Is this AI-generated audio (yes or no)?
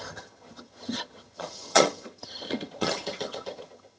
yes